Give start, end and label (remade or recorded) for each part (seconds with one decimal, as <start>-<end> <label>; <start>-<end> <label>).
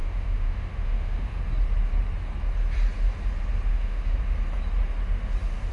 0.0-1.4 remade; 1.4-3.7 recorded; 3.7-4.2 remade; 4.2-5.7 recorded